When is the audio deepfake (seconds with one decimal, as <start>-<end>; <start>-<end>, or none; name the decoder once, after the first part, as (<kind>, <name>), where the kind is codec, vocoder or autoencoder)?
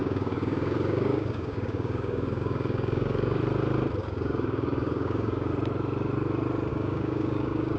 0.0-3.4 (codec, DAC); 4.0-5.5; 6.7-7.8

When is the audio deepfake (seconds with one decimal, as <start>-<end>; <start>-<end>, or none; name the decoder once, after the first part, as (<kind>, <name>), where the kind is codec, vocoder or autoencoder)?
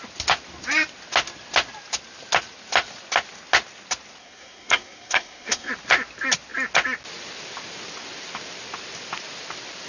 4.2-5.7 (codec, SNAC)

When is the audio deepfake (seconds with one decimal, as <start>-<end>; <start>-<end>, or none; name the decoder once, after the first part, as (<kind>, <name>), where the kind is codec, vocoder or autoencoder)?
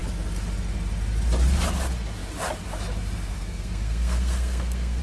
3.3-5.0 (codec, SNAC)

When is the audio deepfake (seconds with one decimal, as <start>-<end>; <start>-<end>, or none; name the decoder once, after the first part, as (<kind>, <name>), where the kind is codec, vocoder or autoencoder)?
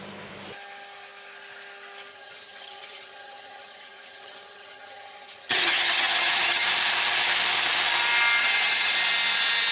2.1-6.7 (vocoder, HiFi-GAN); 8.4-8.9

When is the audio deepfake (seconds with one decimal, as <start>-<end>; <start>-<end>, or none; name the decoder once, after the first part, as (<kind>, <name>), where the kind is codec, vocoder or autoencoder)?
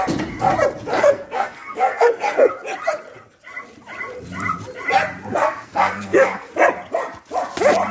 0.9-2.5 (codec, SNAC); 5.3-6.5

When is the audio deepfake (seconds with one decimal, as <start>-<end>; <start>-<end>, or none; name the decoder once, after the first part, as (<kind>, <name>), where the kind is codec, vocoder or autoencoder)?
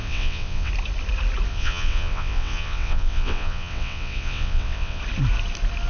0.0-0.7 (vocoder, WaveNeXt); 1.5-5.0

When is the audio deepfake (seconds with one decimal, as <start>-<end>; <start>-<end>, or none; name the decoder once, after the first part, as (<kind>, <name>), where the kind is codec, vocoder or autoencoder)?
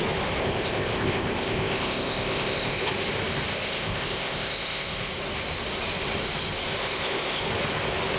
0.4-2.9 (codec, ZipCodec); 3.5-5.1; 6.8-7.4